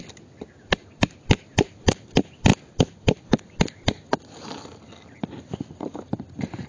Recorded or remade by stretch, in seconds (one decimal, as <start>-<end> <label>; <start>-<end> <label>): 0.0-6.7 recorded